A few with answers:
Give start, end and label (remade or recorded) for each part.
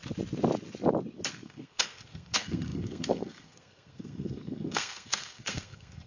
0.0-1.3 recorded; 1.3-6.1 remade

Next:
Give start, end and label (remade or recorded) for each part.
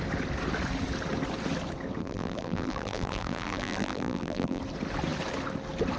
0.0-2.0 recorded; 2.0-4.6 remade; 4.6-6.0 recorded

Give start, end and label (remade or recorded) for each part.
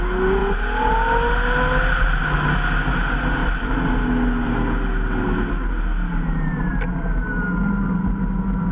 0.0-8.7 recorded